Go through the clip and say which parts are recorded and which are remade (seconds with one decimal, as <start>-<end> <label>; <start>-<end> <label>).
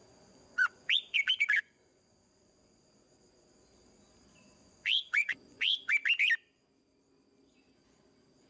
0.0-3.5 remade; 3.5-4.5 recorded; 4.5-5.9 remade; 5.9-8.5 recorded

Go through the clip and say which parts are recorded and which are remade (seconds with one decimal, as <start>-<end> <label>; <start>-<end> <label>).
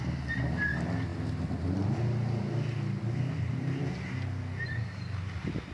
0.0-5.7 recorded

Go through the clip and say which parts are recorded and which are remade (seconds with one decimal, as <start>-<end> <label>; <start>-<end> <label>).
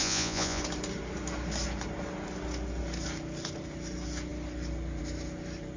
0.0-0.6 remade; 0.6-5.8 recorded